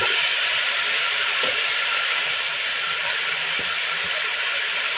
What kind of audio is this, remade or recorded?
remade